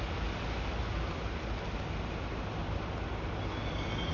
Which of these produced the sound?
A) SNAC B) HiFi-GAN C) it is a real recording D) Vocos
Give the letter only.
C